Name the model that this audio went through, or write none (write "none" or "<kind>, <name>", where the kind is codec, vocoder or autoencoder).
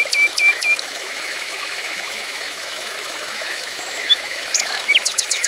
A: autoencoder, DAC-VAE